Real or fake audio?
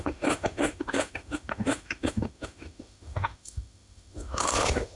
fake